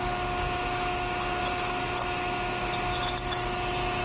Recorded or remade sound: recorded